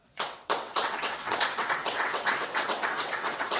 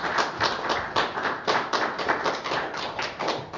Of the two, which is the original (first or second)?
second